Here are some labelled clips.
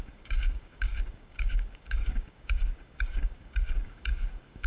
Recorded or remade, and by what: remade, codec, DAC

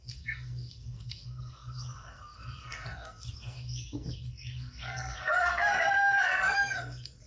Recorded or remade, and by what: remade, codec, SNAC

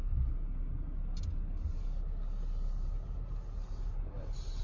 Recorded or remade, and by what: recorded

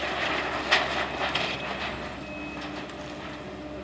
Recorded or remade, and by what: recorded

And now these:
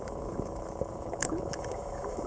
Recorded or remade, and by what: remade, autoencoder, DAC-VAE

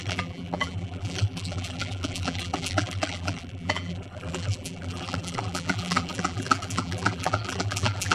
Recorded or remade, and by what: remade, vocoder, BigVGAN v2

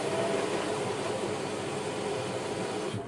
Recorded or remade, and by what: recorded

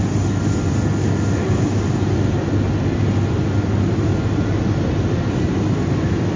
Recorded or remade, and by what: recorded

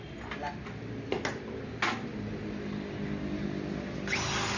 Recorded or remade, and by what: recorded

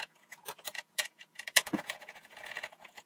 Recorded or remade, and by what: remade, vocoder, Vocos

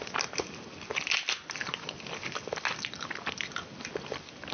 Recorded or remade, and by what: recorded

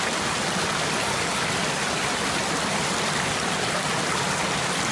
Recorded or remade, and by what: recorded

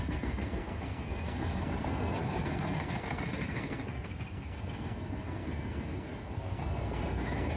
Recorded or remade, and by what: remade, codec, SNAC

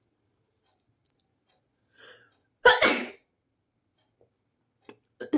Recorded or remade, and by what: recorded